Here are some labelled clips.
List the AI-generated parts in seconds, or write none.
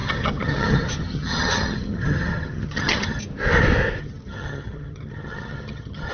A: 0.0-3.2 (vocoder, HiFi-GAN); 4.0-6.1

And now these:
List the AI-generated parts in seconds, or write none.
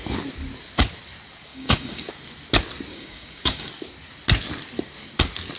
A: 1.5-2.1 (codec, DAC); 2.9-3.7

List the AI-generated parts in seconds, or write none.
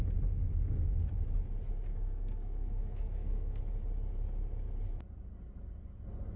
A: 1.9-3.6 (codec, SNAC)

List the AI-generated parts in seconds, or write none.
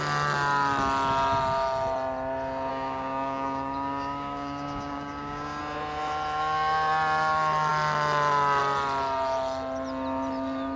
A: 2.7-5.6 (codec, DAC)